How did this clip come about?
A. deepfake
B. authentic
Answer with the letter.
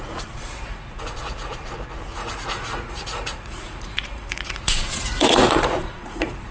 A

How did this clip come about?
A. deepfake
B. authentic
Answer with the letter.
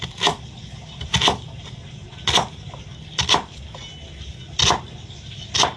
B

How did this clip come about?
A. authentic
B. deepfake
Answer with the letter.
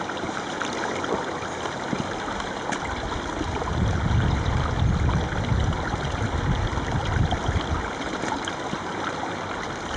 A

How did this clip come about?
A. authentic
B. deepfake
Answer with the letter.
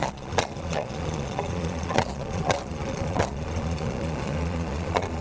B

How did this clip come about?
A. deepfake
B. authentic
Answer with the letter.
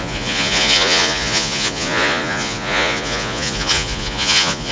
A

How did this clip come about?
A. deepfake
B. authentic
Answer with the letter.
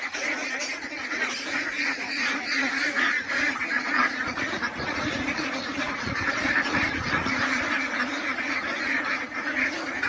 A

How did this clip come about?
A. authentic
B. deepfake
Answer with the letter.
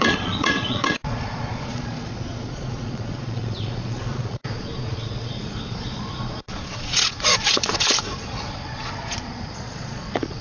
B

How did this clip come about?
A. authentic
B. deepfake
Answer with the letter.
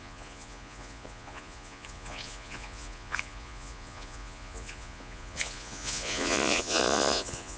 B